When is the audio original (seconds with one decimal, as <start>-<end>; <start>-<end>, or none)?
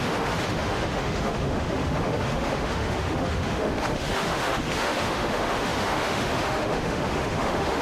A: none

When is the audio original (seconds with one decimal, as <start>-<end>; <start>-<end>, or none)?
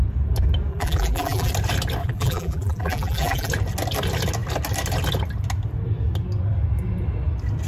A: 0.0-0.7; 1.5-2.0; 3.5-7.7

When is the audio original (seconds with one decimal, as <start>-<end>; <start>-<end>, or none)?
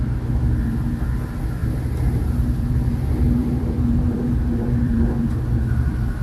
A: 0.0-1.6; 2.4-3.4; 5.2-6.2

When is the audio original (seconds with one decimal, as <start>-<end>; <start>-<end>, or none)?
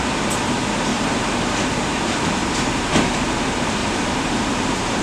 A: 0.0-0.9; 3.4-3.8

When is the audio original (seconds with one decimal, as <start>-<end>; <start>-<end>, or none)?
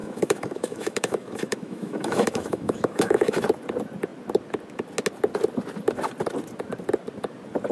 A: 3.4-7.7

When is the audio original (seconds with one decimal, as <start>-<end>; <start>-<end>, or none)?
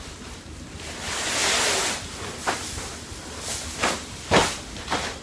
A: none